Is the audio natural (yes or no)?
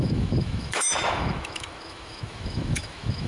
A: no